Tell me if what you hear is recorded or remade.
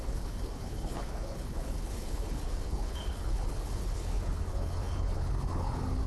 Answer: remade